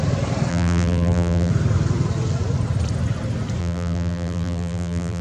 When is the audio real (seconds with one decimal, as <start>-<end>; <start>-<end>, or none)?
0.0-0.5; 1.5-3.6

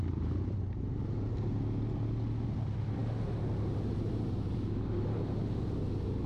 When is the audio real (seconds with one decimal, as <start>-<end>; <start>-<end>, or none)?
0.0-6.3

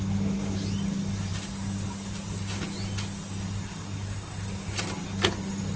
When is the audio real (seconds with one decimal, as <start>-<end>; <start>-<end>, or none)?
0.0-5.8

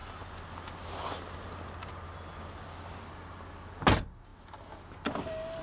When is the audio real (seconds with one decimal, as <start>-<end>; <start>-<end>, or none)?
0.0-5.6

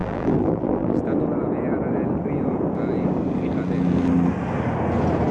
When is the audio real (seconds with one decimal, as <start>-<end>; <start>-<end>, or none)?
1.0-5.3

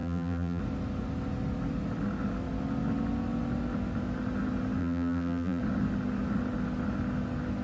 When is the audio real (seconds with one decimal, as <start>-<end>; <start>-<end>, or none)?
0.6-4.8; 5.6-7.6

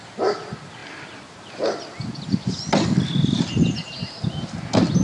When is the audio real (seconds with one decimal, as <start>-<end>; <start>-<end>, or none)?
0.0-5.0